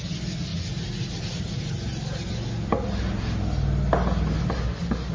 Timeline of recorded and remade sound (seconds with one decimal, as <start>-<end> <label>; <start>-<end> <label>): 0.0-5.1 recorded